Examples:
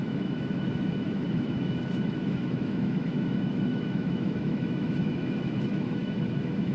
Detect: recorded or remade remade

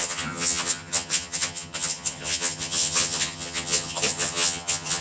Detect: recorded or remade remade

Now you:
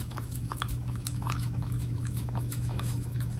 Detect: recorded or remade remade